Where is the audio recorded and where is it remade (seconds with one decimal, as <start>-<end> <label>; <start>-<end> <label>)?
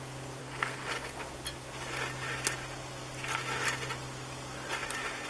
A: 0.0-0.4 recorded; 0.4-0.9 remade; 0.9-5.3 recorded